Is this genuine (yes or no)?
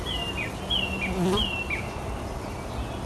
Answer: yes